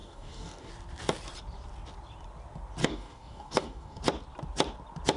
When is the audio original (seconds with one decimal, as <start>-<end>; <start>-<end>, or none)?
0.7-2.8; 4.0-5.2